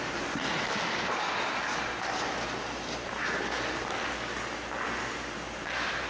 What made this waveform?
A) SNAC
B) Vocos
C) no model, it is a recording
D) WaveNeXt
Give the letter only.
C